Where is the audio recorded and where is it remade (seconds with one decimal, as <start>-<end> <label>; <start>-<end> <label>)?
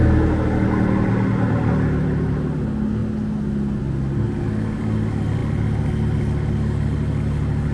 0.0-7.7 recorded